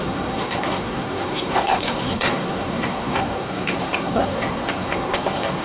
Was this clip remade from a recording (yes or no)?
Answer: yes